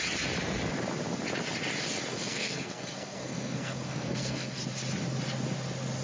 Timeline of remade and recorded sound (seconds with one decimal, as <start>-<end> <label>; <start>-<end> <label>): 0.0-2.1 recorded; 2.1-4.6 remade; 4.6-6.0 recorded